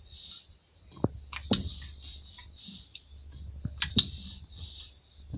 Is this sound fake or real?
real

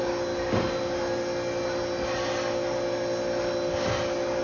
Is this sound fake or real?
real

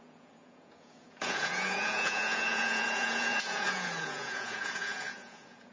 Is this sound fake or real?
fake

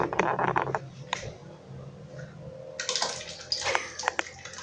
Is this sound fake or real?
real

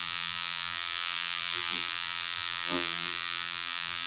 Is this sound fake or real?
fake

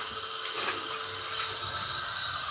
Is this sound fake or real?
real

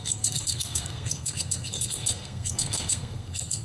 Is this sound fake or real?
fake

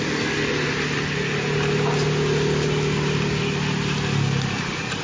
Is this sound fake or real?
real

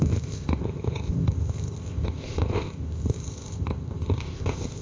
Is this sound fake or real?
fake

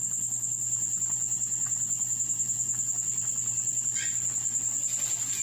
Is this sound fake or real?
real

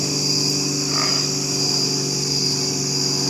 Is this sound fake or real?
real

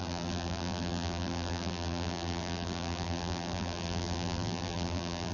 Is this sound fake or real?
fake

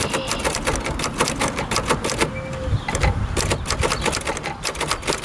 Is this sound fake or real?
real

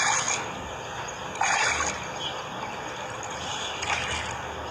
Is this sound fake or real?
real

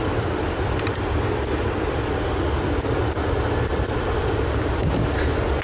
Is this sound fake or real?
real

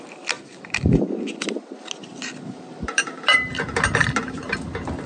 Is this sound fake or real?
real